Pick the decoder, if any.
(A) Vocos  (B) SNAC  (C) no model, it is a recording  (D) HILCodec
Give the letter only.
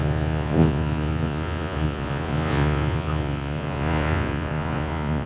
A